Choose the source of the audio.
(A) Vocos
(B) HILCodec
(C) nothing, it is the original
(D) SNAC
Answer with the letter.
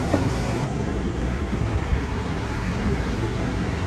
D